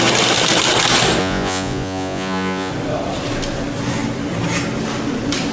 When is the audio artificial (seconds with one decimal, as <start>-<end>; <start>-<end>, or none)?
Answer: 1.2-2.7